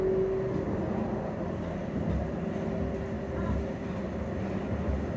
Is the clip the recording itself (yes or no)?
yes